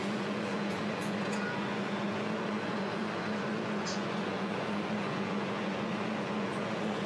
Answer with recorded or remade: remade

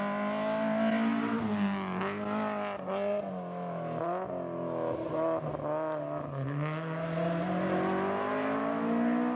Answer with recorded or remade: recorded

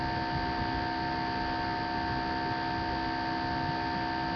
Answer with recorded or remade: recorded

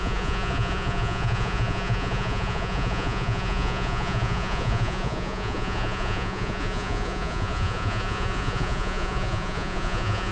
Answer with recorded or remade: remade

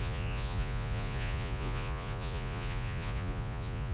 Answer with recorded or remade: remade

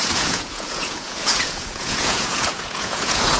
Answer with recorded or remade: remade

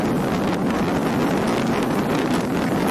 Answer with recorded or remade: recorded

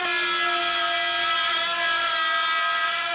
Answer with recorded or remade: recorded